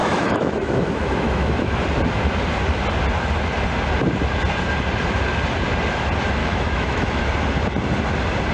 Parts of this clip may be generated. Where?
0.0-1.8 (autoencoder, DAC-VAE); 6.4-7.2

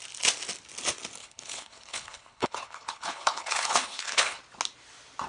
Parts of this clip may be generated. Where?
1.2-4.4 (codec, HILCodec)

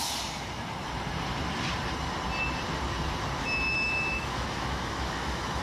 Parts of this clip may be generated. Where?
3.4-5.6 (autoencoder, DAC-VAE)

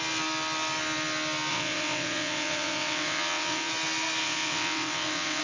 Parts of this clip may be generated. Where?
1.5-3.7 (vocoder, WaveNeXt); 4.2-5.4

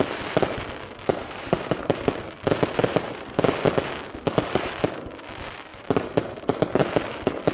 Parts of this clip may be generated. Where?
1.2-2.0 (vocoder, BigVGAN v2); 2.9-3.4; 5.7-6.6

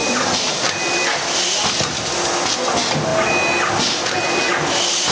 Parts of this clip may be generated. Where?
none

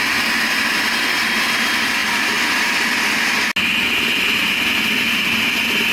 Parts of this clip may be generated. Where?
none

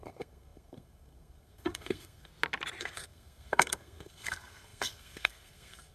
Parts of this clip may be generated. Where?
0.0-2.3 (codec, SNAC); 2.8-5.9